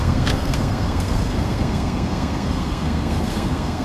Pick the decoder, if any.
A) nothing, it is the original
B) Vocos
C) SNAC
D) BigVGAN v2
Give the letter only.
C